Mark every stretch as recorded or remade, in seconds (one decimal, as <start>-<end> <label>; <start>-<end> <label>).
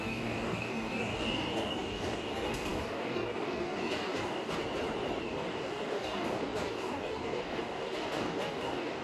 0.0-4.6 remade; 4.6-5.2 recorded; 5.2-9.0 remade